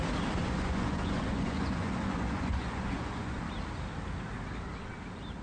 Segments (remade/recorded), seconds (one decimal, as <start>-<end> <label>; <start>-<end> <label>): 0.0-0.4 recorded; 0.4-3.4 remade; 3.4-5.4 recorded